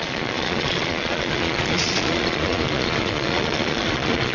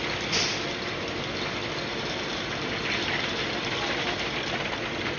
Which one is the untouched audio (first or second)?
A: second